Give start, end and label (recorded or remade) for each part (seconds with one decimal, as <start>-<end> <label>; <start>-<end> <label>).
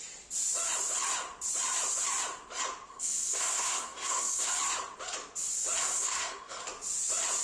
0.0-2.9 recorded; 2.9-4.5 remade; 4.5-5.8 recorded; 5.8-6.6 remade; 6.6-7.4 recorded